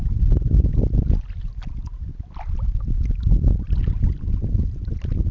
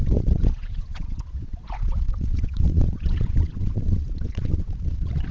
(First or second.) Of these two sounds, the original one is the first